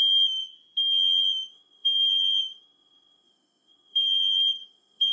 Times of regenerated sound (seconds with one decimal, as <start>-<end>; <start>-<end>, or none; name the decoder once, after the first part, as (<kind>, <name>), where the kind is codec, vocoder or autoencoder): 0.0-0.4 (autoencoder, DAC-VAE); 1.2-5.1

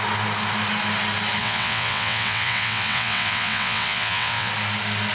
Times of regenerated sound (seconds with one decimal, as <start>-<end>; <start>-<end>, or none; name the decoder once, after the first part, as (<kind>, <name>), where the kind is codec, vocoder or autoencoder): 1.4-4.5 (vocoder, WaveNeXt)